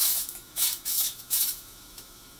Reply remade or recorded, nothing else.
remade